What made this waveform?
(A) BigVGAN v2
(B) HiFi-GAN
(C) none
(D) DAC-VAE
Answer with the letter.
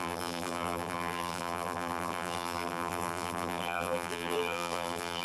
A